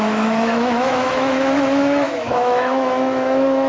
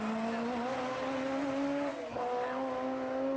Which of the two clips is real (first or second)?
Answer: second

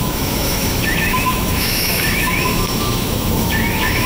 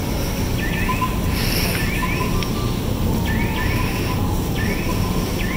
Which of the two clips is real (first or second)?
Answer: second